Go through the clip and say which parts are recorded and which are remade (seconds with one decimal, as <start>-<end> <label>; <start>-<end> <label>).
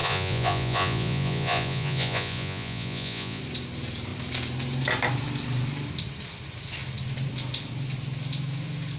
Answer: 0.0-3.4 remade; 3.4-9.0 recorded